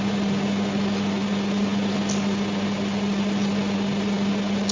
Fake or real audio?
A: real